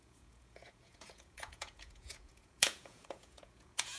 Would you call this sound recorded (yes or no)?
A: no